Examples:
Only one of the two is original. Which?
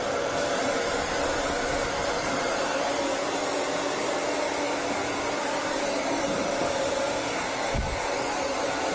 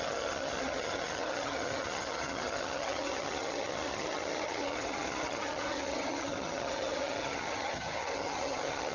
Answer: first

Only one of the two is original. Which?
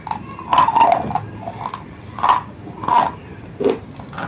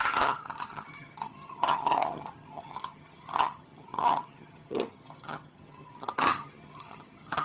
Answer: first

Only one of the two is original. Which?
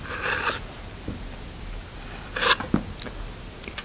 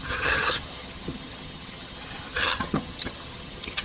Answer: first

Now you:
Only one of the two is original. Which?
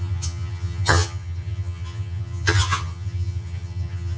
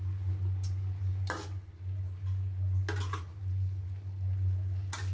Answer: second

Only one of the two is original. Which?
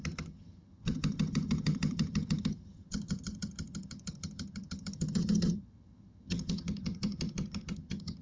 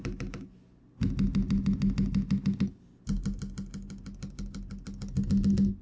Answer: second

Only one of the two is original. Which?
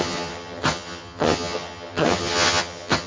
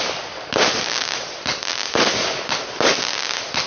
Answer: second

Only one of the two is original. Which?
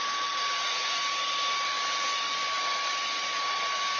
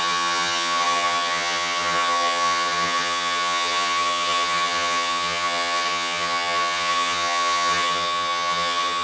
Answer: first